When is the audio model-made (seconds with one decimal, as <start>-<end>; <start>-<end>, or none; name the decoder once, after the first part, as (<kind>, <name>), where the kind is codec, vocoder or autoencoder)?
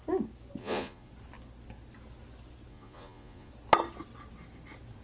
0.6-1.1 (vocoder, Vocos); 2.7-3.5